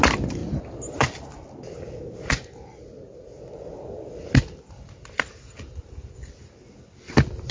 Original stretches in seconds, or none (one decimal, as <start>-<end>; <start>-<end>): 0.0-7.5